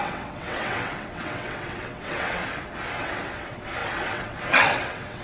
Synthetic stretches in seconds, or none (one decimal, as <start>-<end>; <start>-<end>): 0.0-2.4; 3.0-5.2